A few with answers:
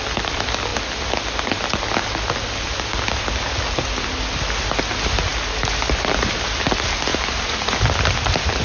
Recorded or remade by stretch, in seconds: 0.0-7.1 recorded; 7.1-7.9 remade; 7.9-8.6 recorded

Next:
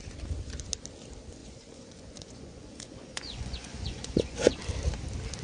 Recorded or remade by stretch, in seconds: 0.0-1.4 recorded; 1.4-4.6 remade; 4.6-5.4 recorded

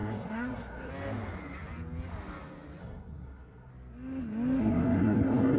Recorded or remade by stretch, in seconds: 0.0-0.9 remade; 0.9-2.8 recorded; 2.8-3.7 remade; 3.7-4.6 recorded; 4.6-5.6 remade

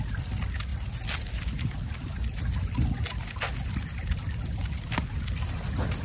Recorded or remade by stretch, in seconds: 0.0-6.0 recorded